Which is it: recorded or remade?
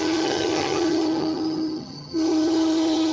remade